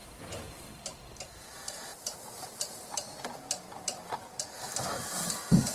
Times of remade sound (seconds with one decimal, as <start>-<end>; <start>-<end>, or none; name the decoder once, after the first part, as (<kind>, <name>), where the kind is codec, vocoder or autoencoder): 0.0-5.7 (vocoder, BigVGAN v2)